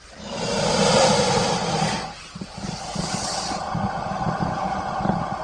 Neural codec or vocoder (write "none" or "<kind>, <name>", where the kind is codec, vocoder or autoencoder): none